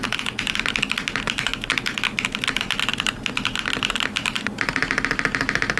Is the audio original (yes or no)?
yes